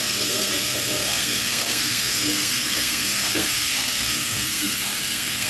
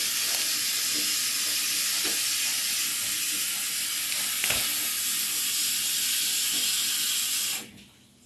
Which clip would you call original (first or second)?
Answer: second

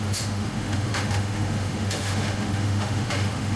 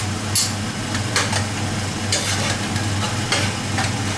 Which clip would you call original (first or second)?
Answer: second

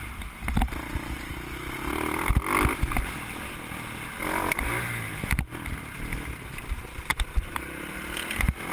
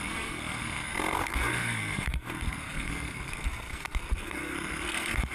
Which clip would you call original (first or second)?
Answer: first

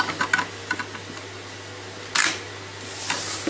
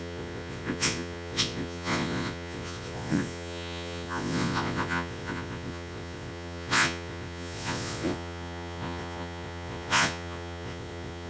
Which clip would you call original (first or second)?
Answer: first